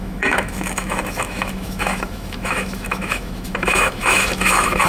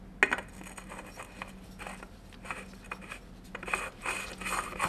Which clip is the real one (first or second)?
second